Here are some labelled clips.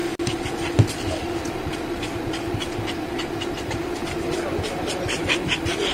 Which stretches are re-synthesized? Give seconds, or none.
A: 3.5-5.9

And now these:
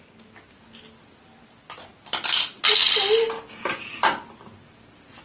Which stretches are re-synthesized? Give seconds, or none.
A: none

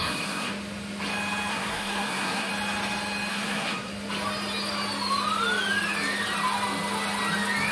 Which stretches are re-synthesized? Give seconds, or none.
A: 0.0-0.5; 1.5-2.5; 3.3-3.9

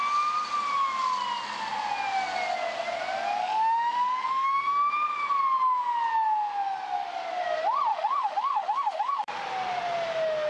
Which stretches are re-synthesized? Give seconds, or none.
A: 3.4-4.9; 7.9-9.3